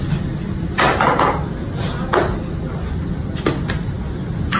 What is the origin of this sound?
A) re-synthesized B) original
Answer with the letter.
B